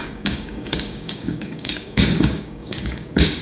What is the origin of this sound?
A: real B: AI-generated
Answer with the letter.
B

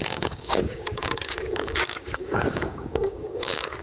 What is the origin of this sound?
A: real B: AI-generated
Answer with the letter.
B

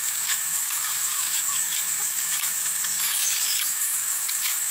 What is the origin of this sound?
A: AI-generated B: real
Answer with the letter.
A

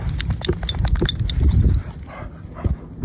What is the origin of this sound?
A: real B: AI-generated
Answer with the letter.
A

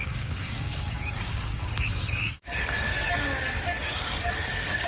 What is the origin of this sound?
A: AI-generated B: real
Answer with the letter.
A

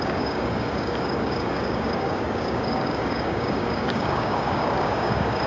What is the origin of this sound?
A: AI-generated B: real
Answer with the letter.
A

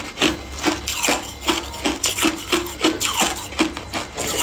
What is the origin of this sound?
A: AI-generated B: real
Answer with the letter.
B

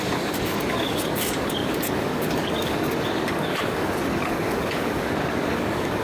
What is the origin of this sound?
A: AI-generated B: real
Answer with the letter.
A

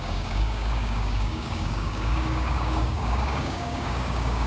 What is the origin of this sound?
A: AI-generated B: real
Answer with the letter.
A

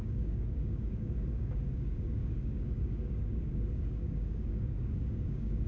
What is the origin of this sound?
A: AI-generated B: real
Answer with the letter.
A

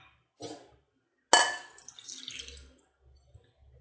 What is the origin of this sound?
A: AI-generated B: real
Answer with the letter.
B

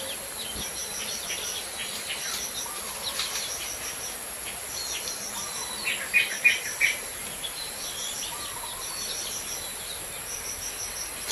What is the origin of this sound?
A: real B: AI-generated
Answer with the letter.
A